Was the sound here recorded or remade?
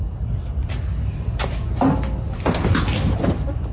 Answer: recorded